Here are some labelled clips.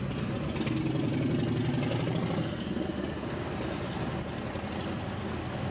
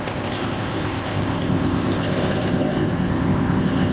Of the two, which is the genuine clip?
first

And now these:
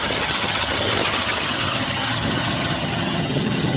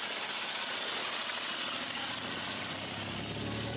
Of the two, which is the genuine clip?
second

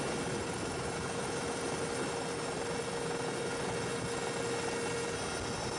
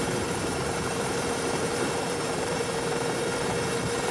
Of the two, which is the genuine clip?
first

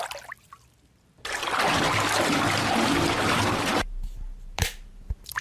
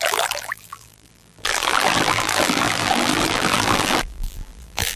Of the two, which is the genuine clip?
first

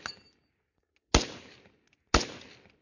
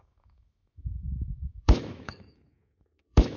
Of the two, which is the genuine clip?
first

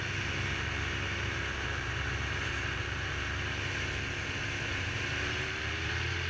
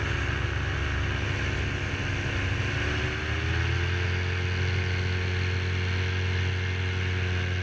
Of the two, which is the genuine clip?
second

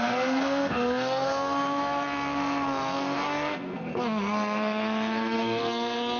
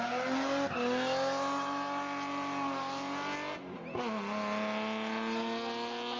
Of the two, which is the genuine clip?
second